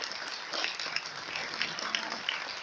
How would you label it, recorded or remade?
recorded